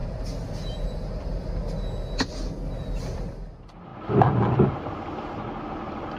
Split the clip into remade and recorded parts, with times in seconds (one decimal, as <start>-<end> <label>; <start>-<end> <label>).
0.0-6.2 recorded